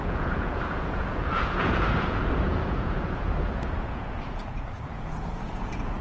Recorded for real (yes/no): no